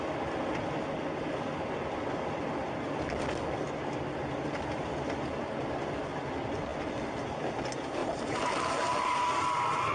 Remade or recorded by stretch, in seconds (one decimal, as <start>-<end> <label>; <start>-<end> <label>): 0.0-9.9 recorded